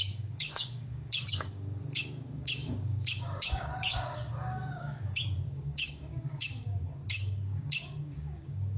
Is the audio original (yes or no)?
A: no